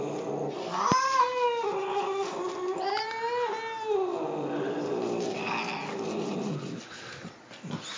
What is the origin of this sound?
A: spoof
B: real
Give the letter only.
B